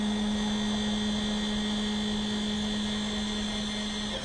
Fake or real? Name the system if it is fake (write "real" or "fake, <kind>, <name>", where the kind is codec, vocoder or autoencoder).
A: real